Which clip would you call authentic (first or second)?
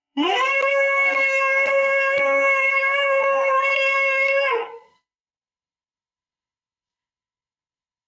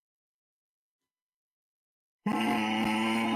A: second